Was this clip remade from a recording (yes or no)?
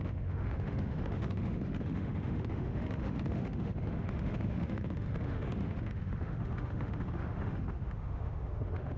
yes